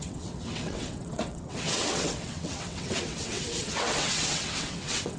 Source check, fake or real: fake